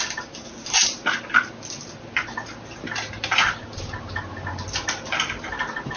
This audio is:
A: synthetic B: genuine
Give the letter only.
B